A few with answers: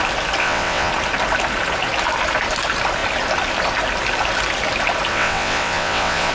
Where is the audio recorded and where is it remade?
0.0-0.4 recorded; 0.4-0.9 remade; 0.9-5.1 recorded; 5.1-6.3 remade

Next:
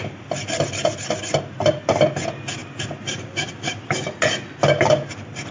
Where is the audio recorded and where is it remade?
0.0-5.5 recorded

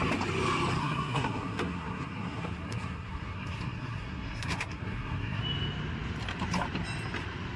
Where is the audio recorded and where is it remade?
0.0-0.8 recorded; 0.8-5.4 remade; 5.4-7.6 recorded

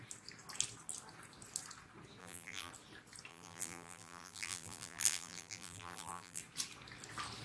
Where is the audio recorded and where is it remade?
0.0-2.2 recorded; 2.2-2.7 remade; 2.7-3.3 recorded; 3.3-6.4 remade; 6.4-7.4 recorded

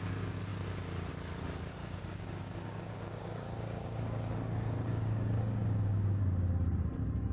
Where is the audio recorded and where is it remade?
0.0-1.8 recorded; 1.8-6.2 remade; 6.2-7.3 recorded

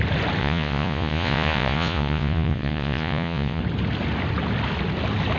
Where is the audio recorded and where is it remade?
0.0-0.4 recorded; 0.4-3.6 remade; 3.6-5.4 recorded